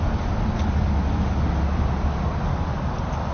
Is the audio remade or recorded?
recorded